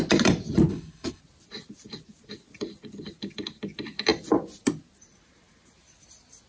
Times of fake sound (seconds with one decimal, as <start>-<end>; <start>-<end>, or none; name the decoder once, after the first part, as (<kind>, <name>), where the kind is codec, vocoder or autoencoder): 0.7-1.2 (codec, HILCodec)

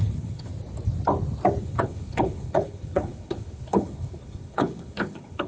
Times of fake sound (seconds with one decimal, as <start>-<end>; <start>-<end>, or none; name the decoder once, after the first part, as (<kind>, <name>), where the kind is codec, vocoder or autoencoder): 0.0-0.5 (codec, HILCodec); 1.6-5.5